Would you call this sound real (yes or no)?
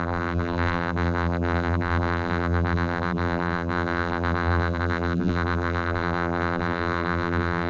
no